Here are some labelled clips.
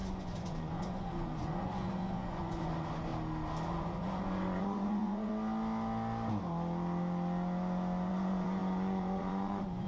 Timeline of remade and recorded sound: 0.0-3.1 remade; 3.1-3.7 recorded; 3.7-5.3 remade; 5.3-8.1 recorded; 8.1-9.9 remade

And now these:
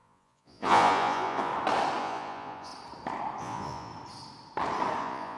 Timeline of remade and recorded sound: 0.0-1.5 remade; 1.5-2.0 recorded; 2.0-2.7 remade; 2.7-3.4 recorded; 3.4-3.9 remade; 3.9-5.0 recorded; 5.0-5.4 remade

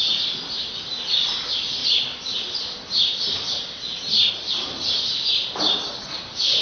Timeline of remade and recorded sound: 0.0-6.6 recorded